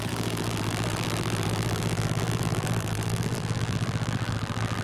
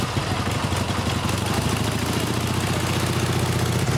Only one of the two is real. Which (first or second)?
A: second